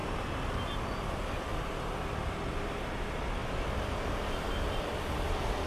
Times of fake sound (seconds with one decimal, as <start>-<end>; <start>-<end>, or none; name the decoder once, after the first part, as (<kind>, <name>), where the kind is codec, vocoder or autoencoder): none